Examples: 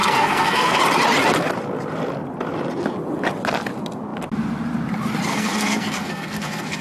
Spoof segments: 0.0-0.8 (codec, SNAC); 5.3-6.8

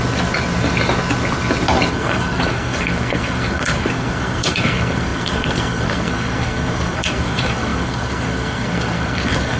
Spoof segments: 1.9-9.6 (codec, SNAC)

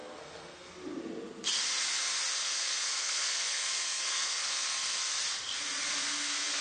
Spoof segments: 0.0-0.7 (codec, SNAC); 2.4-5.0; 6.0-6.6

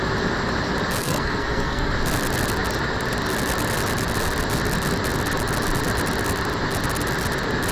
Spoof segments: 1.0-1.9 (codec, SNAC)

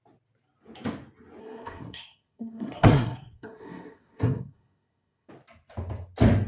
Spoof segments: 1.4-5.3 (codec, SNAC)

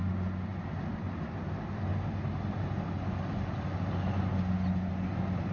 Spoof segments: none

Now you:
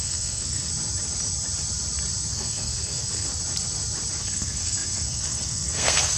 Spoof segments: 0.0-0.7 (codec, SNAC); 2.3-3.3; 4.2-6.2